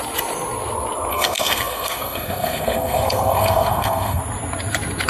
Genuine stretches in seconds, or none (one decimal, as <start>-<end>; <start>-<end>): 0.0-1.1; 4.2-5.1